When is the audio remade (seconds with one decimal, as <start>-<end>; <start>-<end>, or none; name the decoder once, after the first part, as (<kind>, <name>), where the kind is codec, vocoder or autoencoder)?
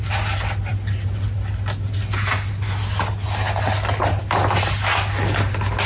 none